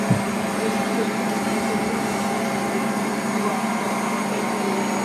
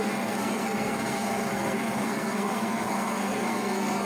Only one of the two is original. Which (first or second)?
first